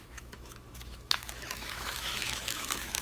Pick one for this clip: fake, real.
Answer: fake